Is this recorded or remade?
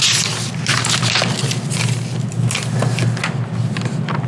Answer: recorded